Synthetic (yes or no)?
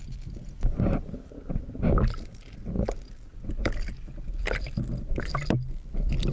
no